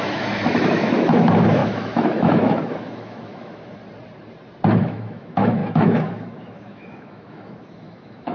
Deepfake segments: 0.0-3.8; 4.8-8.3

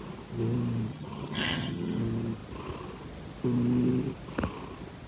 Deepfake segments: 0.9-2.0

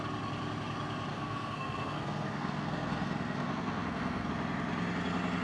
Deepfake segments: 1.1-4.3

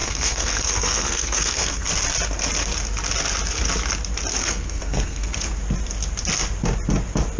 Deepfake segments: 0.0-1.9; 4.4-5.5